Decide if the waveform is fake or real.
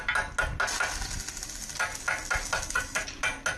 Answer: real